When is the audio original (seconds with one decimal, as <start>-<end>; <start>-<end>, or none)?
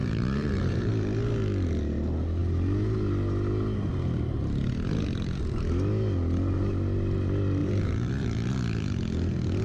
0.9-7.6; 8.5-9.6